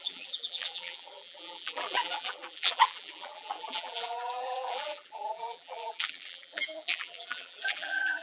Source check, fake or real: fake